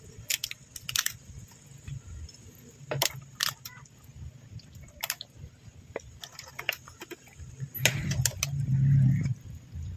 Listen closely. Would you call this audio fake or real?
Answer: real